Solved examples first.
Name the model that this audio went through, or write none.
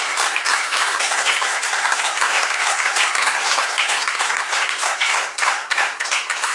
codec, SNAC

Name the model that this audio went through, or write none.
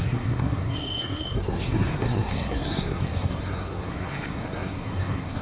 codec, SNAC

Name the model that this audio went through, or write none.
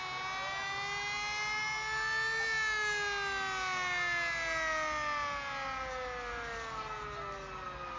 none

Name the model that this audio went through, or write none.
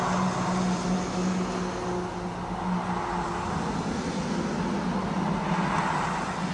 none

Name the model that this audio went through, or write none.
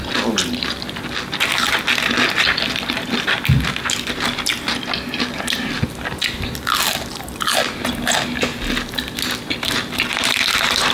none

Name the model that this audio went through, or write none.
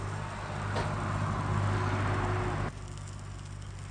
none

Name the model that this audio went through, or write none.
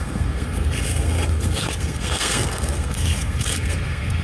codec, SNAC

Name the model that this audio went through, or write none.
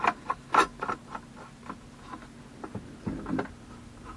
none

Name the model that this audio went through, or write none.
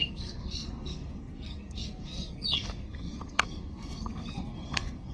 codec, SNAC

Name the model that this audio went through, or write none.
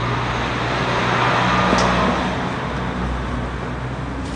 none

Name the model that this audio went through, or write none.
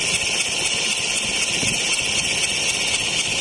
none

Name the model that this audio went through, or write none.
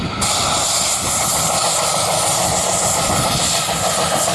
none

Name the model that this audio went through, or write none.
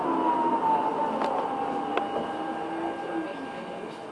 none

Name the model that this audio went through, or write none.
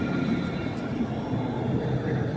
none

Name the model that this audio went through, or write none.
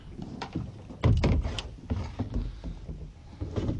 none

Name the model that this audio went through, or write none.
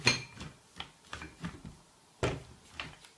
none